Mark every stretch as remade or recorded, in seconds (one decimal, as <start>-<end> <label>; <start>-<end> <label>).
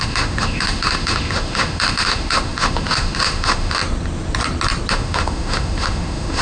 0.0-3.8 remade; 3.8-4.9 recorded; 4.9-6.4 remade